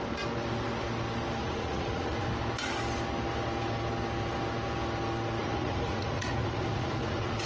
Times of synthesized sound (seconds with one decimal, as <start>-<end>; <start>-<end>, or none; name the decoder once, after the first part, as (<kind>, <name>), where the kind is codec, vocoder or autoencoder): 1.4-2.3 (vocoder, Vocos); 5.4-7.5